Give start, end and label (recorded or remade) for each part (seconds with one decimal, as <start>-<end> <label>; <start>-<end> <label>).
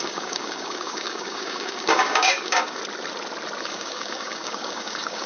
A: 0.0-2.8 remade; 2.8-3.6 recorded; 3.6-5.3 remade